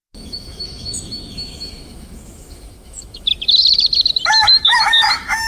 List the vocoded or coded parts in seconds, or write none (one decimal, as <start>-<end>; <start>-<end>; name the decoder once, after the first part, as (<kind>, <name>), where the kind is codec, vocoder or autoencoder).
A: 0.0-3.3 (autoencoder, DAC-VAE); 4.4-5.5